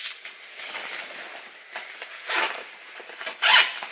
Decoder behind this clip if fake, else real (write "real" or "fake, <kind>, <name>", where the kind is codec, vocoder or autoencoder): real